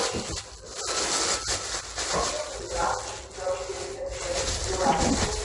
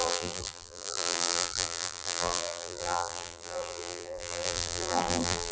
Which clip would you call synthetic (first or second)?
second